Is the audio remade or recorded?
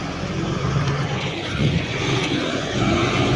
remade